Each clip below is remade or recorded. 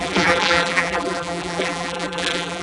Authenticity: remade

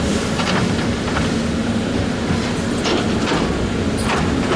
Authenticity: remade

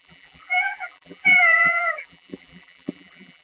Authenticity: remade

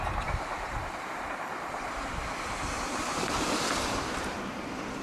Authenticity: remade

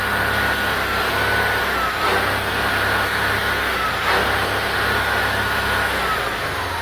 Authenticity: recorded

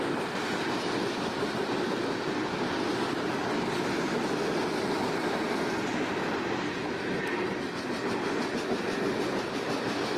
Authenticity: recorded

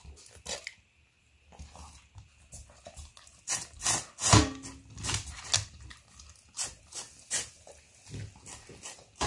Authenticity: recorded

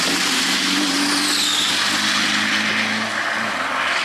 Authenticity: recorded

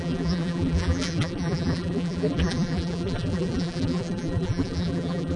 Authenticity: remade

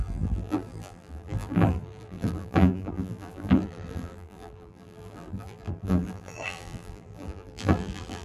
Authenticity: remade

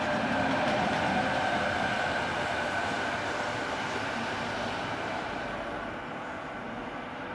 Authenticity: remade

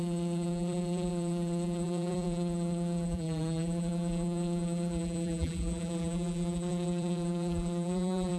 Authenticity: remade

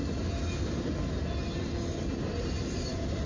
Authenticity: recorded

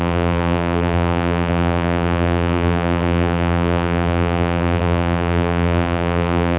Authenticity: remade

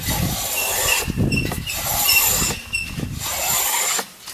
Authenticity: recorded